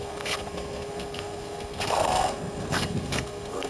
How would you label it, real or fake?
fake